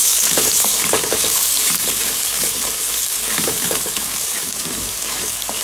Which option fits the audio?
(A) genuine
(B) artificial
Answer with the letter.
B